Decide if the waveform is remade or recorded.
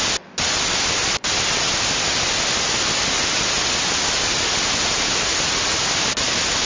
recorded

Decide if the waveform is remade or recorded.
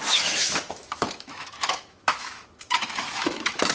remade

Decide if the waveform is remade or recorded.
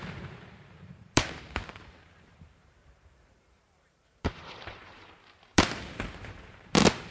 remade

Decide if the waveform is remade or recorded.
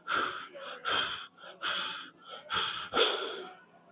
recorded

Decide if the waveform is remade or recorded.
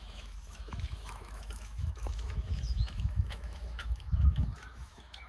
remade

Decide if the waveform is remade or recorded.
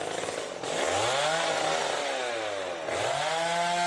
recorded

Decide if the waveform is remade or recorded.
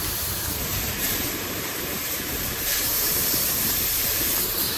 remade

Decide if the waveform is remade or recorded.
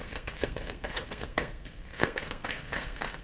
remade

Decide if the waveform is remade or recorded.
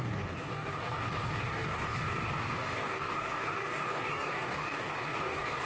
remade